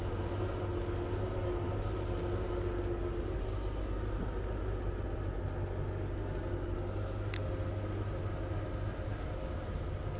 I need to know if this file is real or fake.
real